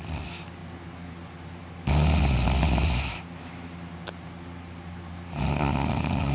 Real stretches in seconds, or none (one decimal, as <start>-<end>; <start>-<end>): 0.0-6.3